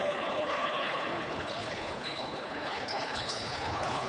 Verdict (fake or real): fake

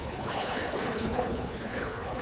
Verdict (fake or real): fake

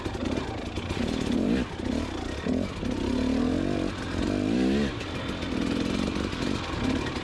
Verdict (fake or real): real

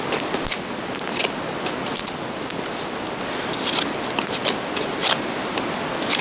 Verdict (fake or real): real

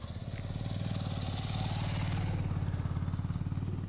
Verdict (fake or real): real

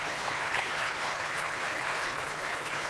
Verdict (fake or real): fake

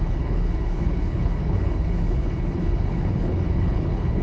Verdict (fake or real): fake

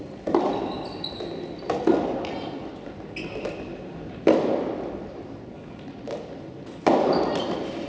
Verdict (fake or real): real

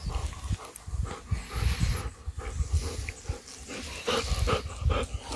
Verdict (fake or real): real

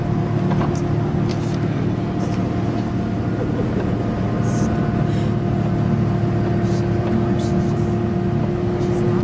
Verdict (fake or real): real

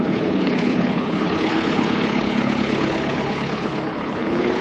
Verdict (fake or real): fake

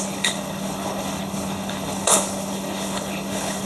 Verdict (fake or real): fake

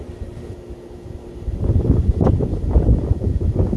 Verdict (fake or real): real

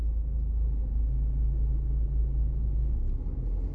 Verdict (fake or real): real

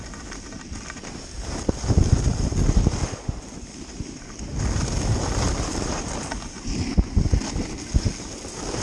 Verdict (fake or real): real